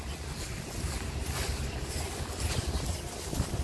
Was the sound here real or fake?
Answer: real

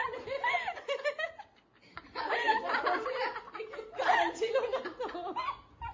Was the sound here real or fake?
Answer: real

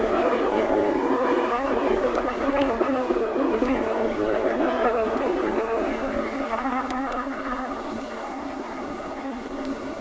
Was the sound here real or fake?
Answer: fake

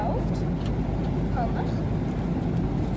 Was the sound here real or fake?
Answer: real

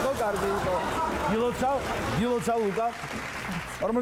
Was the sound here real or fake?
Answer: real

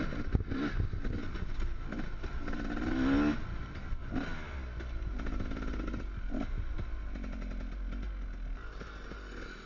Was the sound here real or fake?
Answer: real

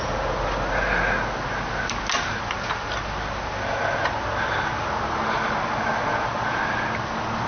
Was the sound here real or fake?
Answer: real